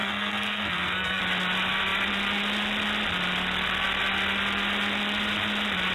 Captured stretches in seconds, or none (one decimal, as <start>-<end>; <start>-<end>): 1.2-5.9